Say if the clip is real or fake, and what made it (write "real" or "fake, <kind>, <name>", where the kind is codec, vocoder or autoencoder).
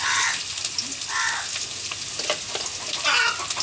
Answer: real